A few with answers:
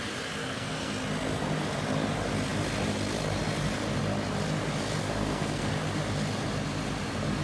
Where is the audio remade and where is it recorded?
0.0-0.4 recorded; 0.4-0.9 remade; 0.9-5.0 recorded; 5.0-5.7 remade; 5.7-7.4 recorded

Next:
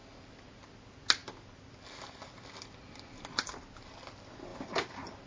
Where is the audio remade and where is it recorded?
0.0-5.3 recorded

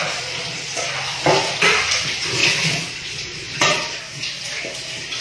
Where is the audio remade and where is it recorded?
0.0-2.4 recorded; 2.4-4.0 remade; 4.0-5.2 recorded